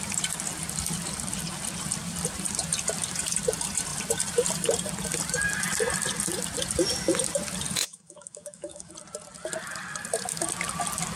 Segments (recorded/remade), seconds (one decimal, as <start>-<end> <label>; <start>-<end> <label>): 0.0-7.8 recorded; 7.8-8.9 remade; 8.9-11.2 recorded